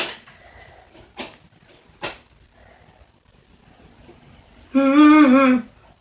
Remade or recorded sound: recorded